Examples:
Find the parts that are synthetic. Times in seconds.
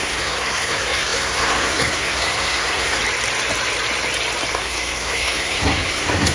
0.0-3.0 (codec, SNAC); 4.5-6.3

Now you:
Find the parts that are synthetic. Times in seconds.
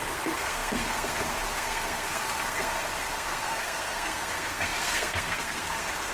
0.0-6.1 (codec, SNAC)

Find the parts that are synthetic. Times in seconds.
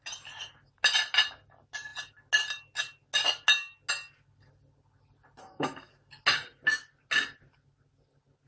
5.4-5.9 (codec, SNAC)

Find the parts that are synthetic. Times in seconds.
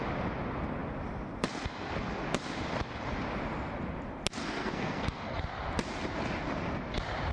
4.4-5.4 (codec, SNAC)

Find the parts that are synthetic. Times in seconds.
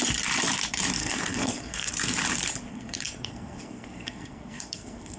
1.0-1.9 (codec, SNAC); 2.7-5.2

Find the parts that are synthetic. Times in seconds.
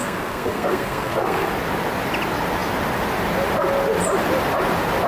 0.0-1.5 (codec, SNAC)